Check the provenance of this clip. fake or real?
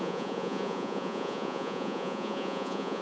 fake